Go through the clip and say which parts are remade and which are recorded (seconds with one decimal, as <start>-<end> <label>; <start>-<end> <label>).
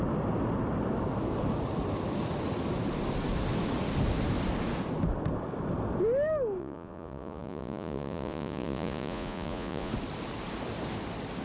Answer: 0.0-6.6 recorded; 6.6-9.9 remade; 9.9-11.4 recorded